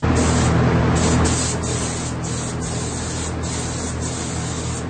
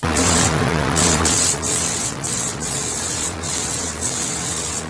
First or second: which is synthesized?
second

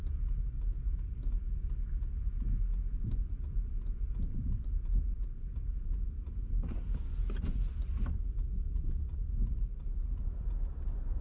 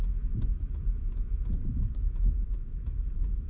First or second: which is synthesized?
second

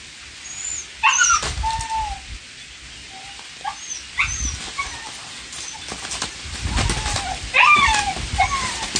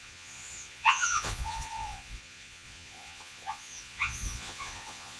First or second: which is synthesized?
second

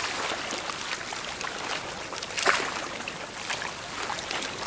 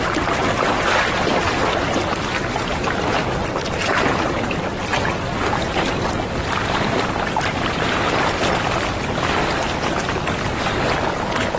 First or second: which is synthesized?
second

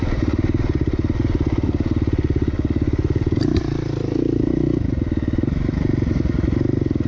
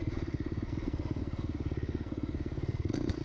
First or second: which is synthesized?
second